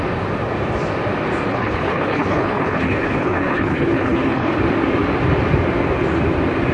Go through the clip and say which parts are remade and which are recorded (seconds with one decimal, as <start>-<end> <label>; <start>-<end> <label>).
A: 0.0-1.5 recorded; 1.5-4.6 remade; 4.6-6.7 recorded